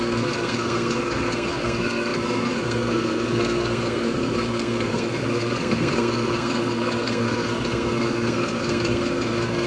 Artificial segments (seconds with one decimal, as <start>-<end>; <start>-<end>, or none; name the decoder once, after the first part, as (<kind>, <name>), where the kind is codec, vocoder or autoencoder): 0.0-9.7 (codec, SNAC)